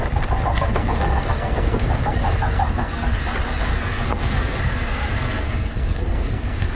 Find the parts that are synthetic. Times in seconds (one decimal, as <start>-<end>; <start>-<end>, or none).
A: 0.5-3.2; 3.7-6.7